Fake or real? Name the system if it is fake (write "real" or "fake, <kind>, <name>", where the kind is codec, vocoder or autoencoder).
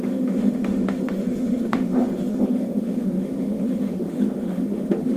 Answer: fake, autoencoder, DAC-VAE